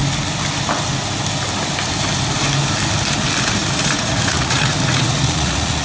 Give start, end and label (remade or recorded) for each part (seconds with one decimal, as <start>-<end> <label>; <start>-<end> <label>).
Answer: 0.0-3.5 recorded; 3.5-5.8 remade